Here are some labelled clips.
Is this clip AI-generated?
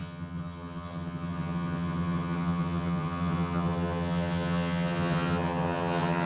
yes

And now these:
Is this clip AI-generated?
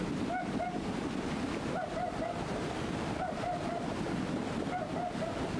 no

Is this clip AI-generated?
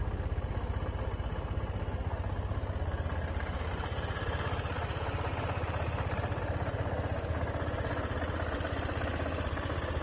no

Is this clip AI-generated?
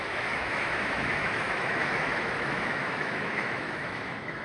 yes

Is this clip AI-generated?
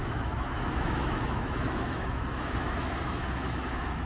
yes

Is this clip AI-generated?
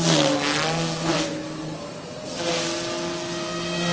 no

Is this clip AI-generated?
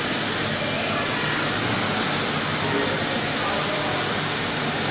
no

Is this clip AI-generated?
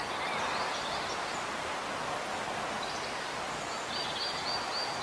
no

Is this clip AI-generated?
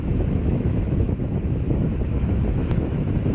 yes